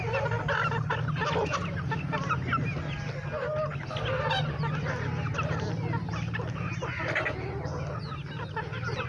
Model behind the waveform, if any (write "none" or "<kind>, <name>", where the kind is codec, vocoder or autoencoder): none